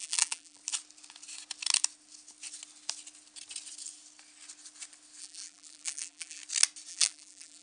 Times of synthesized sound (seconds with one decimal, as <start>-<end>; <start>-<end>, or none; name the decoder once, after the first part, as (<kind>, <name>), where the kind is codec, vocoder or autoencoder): 0.0-0.6 (vocoder, BigVGAN v2); 5.2-6.4; 6.9-7.6

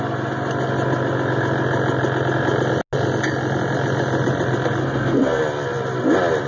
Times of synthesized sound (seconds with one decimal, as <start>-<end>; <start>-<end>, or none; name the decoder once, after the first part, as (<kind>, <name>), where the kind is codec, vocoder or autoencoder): 4.8-5.4 (codec, SNAC)

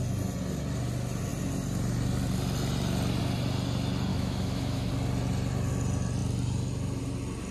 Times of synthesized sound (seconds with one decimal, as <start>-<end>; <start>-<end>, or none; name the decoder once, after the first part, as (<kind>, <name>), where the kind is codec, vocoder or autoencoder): 4.1-4.9 (autoencoder, DAC-VAE)

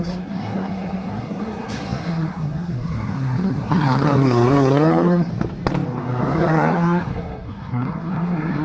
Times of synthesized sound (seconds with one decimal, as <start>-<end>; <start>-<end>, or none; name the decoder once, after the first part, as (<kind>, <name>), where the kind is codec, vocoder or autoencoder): 0.0-5.3 (codec, SNAC); 6.0-8.6

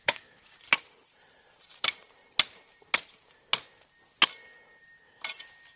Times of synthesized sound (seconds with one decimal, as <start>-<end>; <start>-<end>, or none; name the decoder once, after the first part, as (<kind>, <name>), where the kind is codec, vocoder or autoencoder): 0.0-0.6 (autoencoder, DAC-VAE)

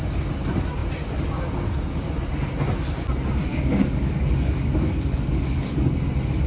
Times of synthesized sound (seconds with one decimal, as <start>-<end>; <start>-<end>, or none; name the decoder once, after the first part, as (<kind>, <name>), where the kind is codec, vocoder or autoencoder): 3.5-5.9 (codec, DAC)

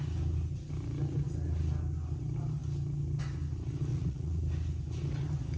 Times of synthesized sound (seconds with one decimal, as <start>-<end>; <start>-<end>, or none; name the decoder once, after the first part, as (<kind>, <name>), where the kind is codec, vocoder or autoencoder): 3.9-4.4 (vocoder, Vocos)